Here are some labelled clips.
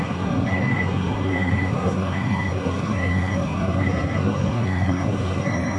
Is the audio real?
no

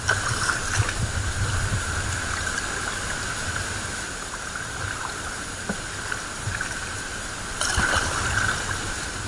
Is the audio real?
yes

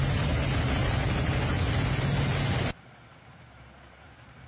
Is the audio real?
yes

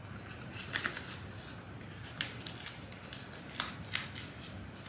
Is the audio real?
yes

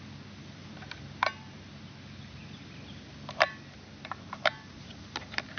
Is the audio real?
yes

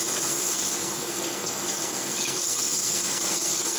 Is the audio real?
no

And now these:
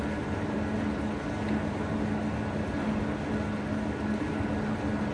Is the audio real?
yes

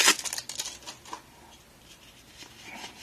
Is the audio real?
yes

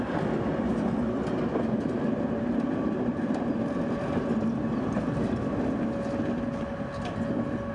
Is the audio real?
yes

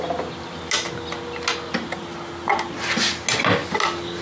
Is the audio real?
yes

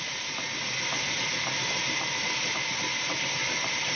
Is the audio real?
yes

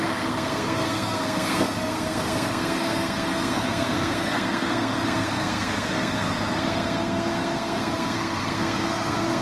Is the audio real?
no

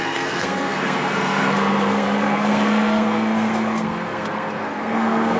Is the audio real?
no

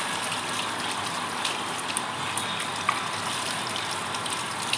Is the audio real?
yes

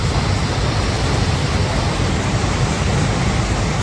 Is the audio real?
yes